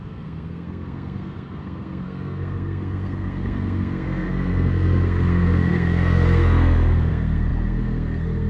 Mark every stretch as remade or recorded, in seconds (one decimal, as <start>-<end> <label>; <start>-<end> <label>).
0.0-8.5 remade